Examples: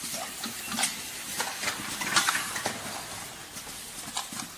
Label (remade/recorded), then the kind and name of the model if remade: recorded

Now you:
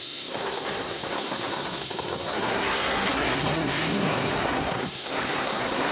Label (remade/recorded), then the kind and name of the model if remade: remade, codec, SNAC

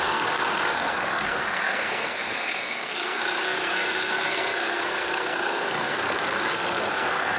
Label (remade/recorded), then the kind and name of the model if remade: remade, codec, SNAC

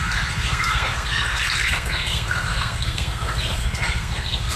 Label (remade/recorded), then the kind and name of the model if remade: remade, codec, SNAC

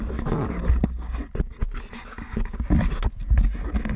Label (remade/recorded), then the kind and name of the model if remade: recorded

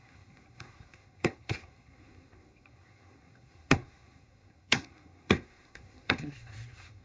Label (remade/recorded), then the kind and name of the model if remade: remade, codec, SNAC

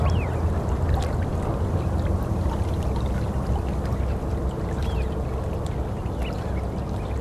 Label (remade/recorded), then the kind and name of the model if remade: recorded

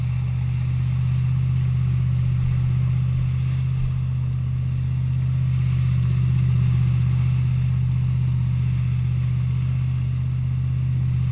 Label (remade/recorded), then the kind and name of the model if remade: recorded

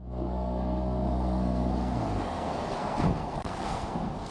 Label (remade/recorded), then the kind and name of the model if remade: remade, codec, SNAC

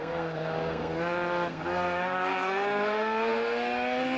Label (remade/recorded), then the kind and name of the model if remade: remade, codec, SNAC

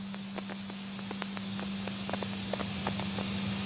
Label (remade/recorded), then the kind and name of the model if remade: recorded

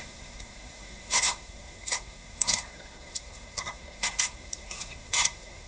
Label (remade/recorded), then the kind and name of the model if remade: remade, codec, SNAC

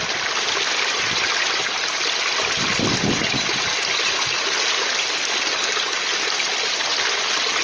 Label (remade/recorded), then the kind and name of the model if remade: recorded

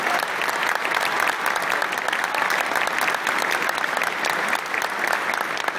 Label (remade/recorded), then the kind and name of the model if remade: recorded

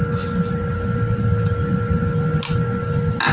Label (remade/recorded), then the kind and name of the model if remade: recorded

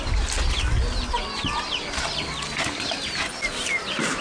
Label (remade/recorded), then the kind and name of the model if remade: recorded